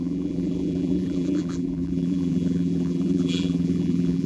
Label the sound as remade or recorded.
remade